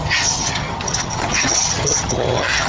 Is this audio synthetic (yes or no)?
yes